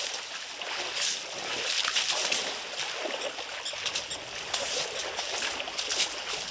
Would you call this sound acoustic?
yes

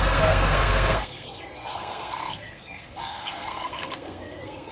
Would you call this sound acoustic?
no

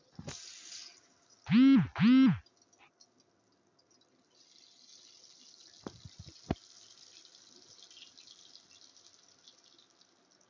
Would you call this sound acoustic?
yes